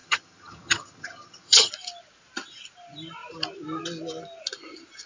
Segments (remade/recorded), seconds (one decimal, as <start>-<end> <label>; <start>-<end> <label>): 0.0-1.7 remade; 1.7-5.1 recorded